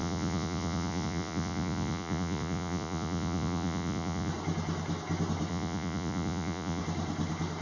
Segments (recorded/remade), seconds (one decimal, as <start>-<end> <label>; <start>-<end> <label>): 0.0-4.3 remade; 4.3-5.5 recorded; 5.5-6.8 remade; 6.8-7.6 recorded